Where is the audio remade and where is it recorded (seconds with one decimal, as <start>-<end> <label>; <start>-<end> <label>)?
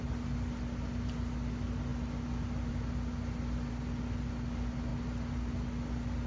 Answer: 0.0-6.3 recorded